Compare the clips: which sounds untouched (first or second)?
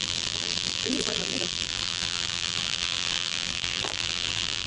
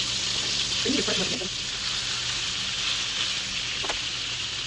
second